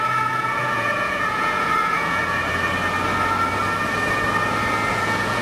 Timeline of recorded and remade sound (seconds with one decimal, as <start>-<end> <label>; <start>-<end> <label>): 0.0-2.2 remade; 2.2-4.9 recorded; 4.9-5.4 remade